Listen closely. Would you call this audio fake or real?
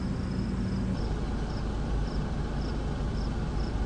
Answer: real